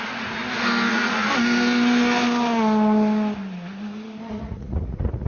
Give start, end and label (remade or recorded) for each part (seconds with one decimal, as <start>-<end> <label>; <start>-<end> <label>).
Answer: 0.0-0.4 remade; 0.4-0.9 recorded; 0.9-1.3 remade; 1.3-4.3 recorded; 4.3-5.3 remade